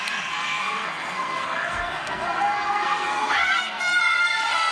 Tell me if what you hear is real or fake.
fake